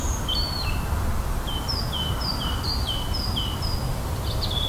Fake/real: real